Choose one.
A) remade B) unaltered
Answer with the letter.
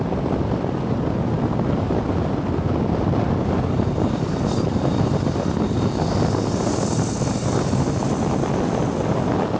B